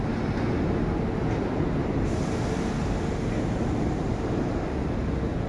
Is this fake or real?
real